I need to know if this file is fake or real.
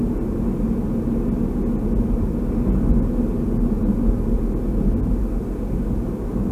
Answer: real